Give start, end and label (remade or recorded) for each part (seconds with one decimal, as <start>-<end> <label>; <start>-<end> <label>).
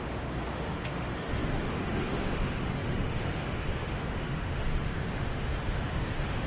0.0-6.5 remade